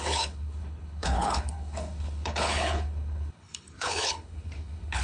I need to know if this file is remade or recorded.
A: remade